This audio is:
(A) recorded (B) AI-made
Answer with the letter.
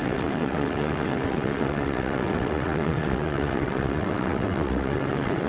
B